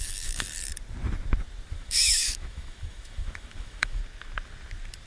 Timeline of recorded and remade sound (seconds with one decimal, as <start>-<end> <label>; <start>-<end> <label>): 0.0-0.7 remade; 0.7-1.7 recorded; 1.7-4.0 remade; 4.0-5.1 recorded